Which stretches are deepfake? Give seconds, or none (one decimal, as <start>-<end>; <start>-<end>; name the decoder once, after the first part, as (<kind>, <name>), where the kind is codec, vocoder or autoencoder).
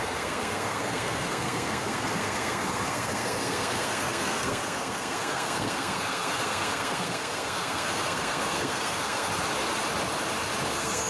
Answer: 0.0-9.3 (codec, SNAC); 10.7-11.1